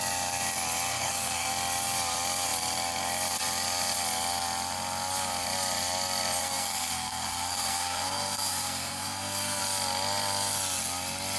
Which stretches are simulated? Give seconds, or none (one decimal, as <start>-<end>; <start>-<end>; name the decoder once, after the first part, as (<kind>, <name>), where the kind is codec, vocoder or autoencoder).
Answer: 0.9-1.5 (codec, SNAC); 6.4-9.6

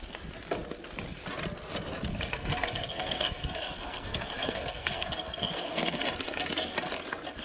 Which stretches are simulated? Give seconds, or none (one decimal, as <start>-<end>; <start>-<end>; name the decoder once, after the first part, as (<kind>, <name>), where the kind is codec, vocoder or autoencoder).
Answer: 2.3-6.0 (codec, SNAC)